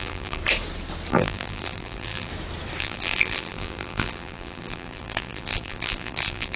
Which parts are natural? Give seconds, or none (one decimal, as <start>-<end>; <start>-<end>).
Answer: 0.4-1.1; 2.3-2.8